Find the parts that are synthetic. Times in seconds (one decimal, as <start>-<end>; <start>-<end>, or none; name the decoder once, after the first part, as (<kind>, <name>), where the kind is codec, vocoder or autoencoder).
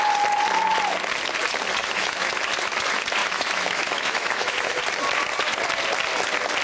1.8-2.3 (autoencoder, DAC-VAE); 3.2-4.8